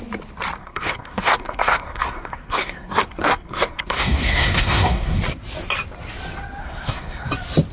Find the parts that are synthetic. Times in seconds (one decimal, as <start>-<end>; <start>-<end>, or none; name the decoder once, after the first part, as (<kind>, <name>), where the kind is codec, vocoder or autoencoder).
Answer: 0.6-5.2 (codec, SNAC); 6.6-7.3